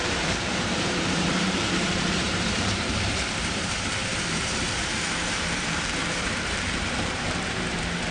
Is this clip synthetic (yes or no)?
yes